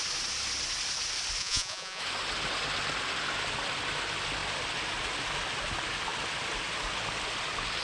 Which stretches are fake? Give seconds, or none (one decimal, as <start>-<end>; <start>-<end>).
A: 1.4-2.0